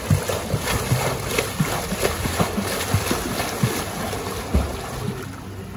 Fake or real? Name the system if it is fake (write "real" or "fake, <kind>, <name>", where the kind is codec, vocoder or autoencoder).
real